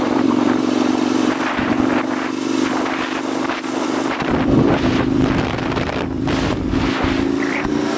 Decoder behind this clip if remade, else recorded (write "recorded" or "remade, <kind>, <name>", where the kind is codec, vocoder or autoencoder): remade, vocoder, BigVGAN v2